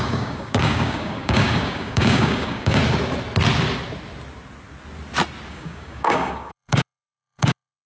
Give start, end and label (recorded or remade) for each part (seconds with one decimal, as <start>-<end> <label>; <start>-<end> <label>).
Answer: 0.0-2.8 remade; 2.8-5.5 recorded; 5.5-7.9 remade